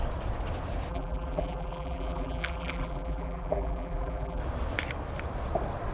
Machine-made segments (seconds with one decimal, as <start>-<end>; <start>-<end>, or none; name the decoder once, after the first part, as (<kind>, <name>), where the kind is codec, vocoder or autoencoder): 0.9-4.4 (vocoder, BigVGAN v2)